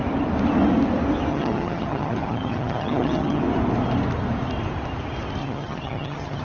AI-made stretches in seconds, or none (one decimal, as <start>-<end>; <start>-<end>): 1.3-3.4; 5.4-6.4